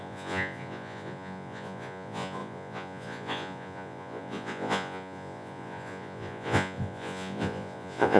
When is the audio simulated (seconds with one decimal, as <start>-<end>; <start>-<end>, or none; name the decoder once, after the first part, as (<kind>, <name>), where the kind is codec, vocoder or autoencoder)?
0.0-8.2 (vocoder, Vocos)